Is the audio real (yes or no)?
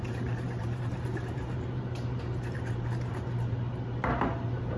no